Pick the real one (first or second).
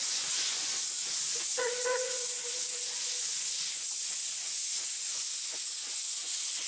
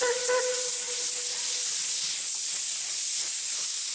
second